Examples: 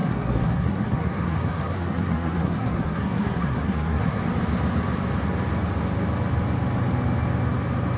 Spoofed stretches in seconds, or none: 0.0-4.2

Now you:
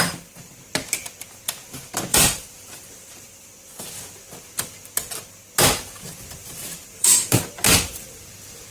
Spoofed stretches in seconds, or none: 2.1-3.5; 6.4-7.4

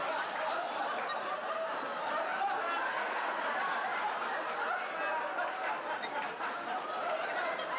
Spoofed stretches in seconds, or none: 2.9-3.4

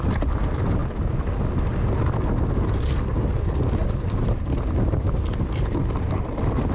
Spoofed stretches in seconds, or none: none

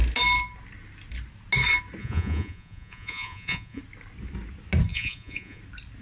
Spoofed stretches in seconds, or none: 2.0-3.8; 4.9-5.6